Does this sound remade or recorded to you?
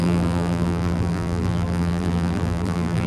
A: remade